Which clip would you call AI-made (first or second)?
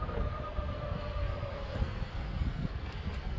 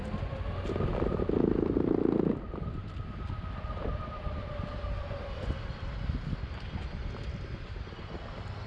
first